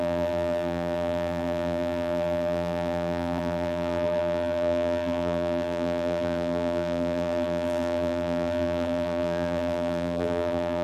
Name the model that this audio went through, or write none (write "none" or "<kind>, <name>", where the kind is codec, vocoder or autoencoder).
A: vocoder, BigVGAN v2